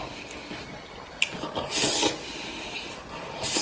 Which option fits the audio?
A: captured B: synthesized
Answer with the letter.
A